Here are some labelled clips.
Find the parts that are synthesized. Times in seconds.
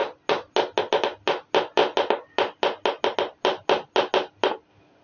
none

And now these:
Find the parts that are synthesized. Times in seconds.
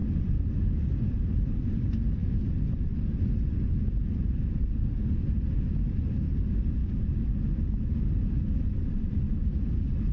none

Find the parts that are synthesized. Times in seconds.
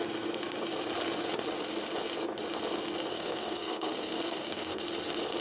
3.1-4.8 (codec, SNAC)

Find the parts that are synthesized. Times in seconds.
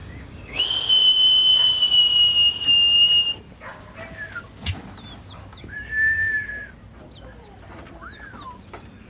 0.0-0.6 (codec, DAC)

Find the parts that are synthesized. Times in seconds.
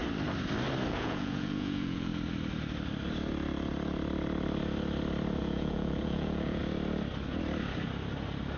0.9-2.1 (vocoder, Vocos); 5.4-6.6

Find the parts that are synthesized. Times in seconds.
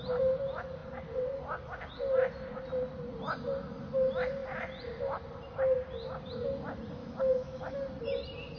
7.0-7.6 (autoencoder, DAC-VAE)